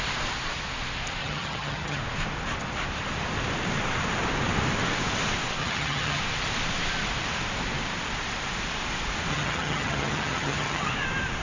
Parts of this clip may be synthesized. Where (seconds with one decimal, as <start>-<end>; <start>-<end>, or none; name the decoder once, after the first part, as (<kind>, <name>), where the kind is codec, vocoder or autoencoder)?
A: 1.2-2.0 (vocoder, HiFi-GAN); 5.6-6.2; 9.3-10.9